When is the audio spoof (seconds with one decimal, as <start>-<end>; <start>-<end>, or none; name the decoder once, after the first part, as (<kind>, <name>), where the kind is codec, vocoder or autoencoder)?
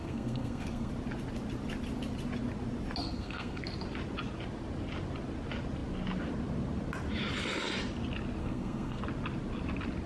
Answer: 0.0-0.9 (codec, SNAC); 3.0-3.6; 8.4-9.0